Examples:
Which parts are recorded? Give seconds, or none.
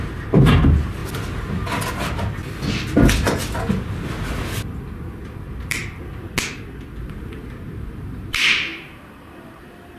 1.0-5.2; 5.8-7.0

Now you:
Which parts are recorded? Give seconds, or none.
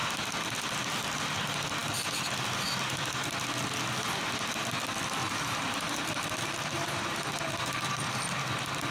0.0-5.2; 8.1-8.9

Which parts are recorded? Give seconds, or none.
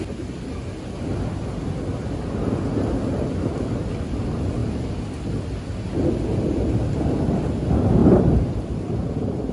0.0-8.0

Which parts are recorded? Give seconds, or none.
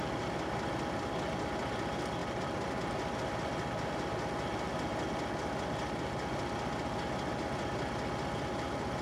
0.0-2.2; 2.9-9.0